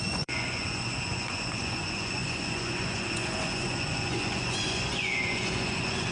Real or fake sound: fake